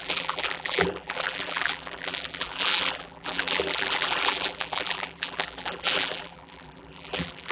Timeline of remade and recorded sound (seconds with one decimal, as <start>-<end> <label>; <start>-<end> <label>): 0.0-7.5 remade